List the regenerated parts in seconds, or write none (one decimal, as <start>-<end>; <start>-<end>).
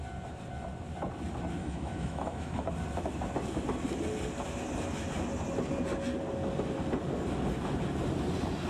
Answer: 1.6-2.7